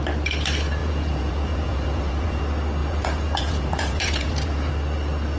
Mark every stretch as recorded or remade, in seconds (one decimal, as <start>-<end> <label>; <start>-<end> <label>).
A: 0.0-0.8 recorded; 0.8-2.4 remade; 2.4-2.8 recorded; 2.8-4.7 remade; 4.7-5.4 recorded